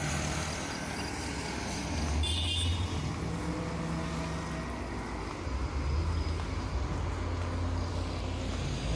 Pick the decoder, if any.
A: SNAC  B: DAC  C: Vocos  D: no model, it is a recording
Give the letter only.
D